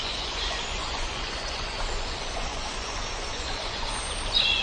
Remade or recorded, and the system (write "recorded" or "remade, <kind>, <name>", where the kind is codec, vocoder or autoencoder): remade, vocoder, Vocos